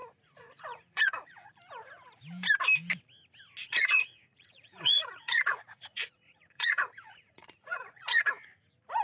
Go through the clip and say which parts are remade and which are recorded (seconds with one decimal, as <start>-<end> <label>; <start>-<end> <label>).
0.0-1.6 remade; 1.6-3.6 recorded; 3.6-8.3 remade; 8.3-9.0 recorded